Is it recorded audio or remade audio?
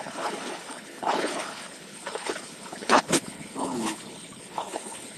remade